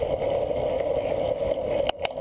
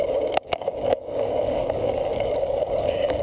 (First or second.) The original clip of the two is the first